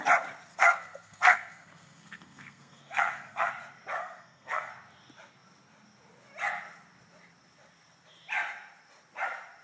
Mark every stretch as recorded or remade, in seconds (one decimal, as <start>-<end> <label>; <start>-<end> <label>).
0.0-0.5 recorded; 0.5-3.5 remade; 3.5-4.0 recorded; 4.0-4.7 remade; 4.7-9.6 recorded